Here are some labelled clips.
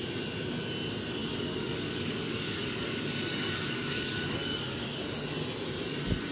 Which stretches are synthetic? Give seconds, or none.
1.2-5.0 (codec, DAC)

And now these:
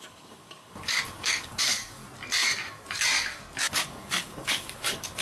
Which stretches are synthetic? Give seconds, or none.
0.0-2.0 (codec, DAC); 3.6-5.2